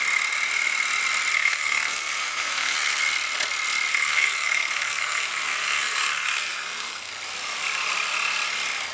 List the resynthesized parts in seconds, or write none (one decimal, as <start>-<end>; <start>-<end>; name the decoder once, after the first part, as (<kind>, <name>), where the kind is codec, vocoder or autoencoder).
1.3-3.0 (codec, SNAC); 3.9-7.1